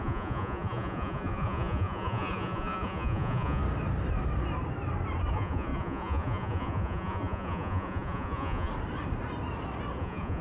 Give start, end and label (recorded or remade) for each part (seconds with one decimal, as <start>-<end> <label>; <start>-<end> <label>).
0.0-3.6 remade; 3.6-5.3 recorded; 5.3-8.7 remade; 8.7-10.0 recorded; 10.0-10.4 remade